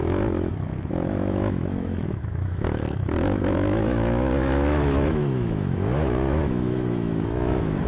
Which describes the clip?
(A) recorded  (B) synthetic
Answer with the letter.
B